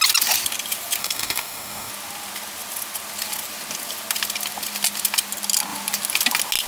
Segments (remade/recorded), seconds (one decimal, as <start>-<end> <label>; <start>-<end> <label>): 0.0-1.0 recorded; 1.0-1.9 remade; 1.9-6.7 recorded